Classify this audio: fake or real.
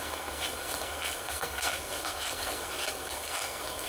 fake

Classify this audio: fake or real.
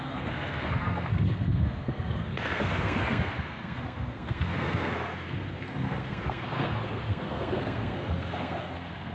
fake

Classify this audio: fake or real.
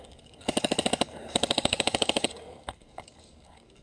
fake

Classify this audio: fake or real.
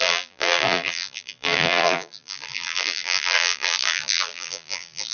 fake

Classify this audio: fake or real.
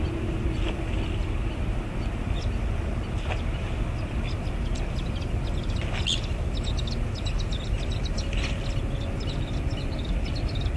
real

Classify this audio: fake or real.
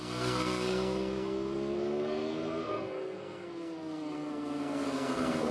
fake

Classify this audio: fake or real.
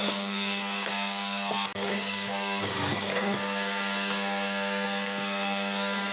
fake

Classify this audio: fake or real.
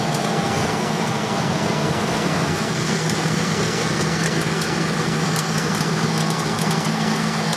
fake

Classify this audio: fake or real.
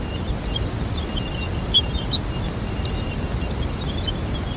real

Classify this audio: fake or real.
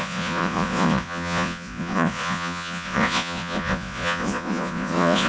fake